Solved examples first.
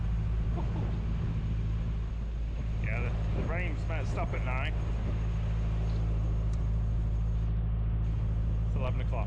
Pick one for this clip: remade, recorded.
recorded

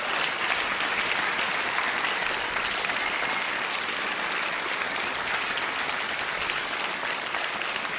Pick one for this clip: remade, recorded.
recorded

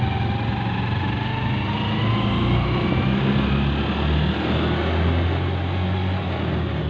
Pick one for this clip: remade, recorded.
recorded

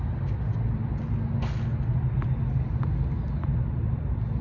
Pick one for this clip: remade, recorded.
recorded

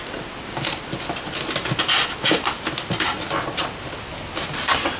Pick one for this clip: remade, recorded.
recorded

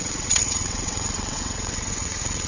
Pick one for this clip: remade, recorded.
remade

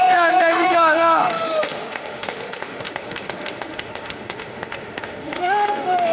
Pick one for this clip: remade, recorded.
remade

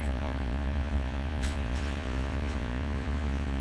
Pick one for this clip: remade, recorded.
remade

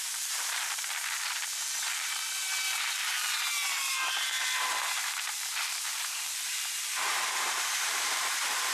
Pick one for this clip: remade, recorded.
remade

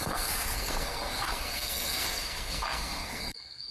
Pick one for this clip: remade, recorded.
remade